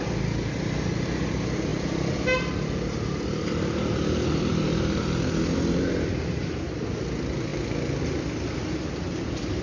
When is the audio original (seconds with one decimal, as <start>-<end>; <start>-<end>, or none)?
0.0-1.7; 5.0-7.5; 8.0-9.6